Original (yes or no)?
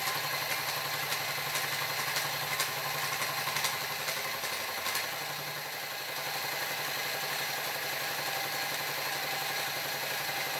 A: yes